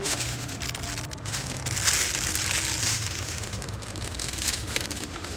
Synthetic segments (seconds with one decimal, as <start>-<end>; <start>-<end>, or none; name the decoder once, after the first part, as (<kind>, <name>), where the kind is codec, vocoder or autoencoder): 0.0-0.6 (autoencoder, DAC-VAE); 1.2-1.6; 2.8-5.4